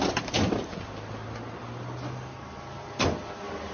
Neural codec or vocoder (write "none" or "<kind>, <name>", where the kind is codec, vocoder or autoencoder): none